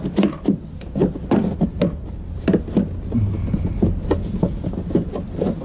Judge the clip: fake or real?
real